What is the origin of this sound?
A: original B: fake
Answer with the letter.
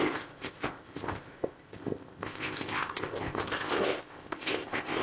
B